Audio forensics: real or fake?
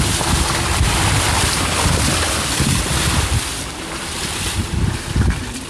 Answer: real